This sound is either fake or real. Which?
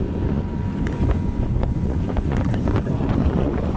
fake